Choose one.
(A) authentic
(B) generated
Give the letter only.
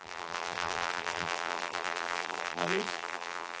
B